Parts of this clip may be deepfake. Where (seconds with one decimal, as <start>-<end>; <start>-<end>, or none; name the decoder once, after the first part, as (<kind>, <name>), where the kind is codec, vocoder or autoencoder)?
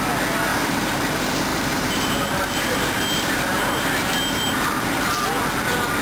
0.5-1.1 (vocoder, BigVGAN v2); 1.5-5.1